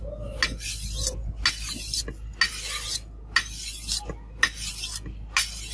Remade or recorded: recorded